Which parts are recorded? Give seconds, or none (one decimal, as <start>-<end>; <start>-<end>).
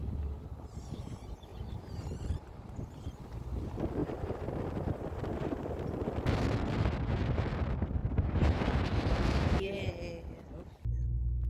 0.0-1.5; 2.8-4.0; 4.6-8.0; 9.9-11.5